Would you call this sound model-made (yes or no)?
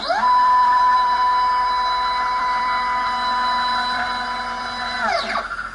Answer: yes